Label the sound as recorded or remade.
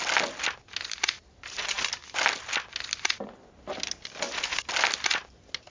recorded